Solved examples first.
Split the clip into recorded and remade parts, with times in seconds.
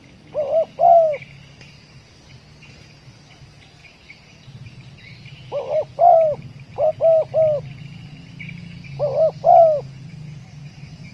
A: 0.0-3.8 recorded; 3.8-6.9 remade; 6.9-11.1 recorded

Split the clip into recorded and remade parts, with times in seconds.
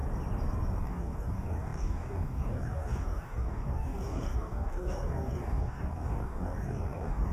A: 0.0-0.8 recorded; 0.8-7.3 remade